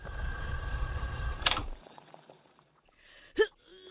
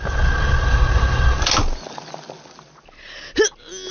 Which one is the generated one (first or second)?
first